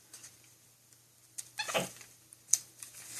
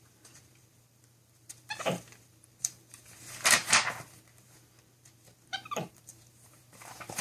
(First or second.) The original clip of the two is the first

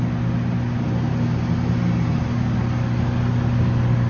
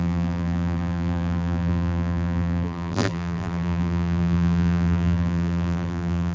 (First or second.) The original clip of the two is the first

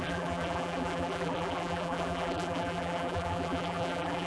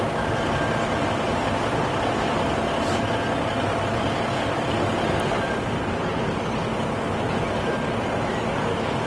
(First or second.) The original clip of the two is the second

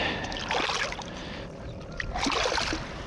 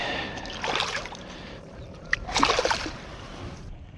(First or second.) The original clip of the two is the first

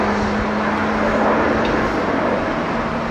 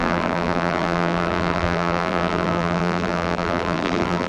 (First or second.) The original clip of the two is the first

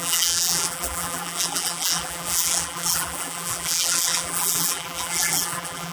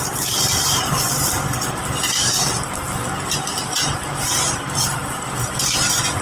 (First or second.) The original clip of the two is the second